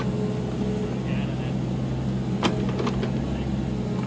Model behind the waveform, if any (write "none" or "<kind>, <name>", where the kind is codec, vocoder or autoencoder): none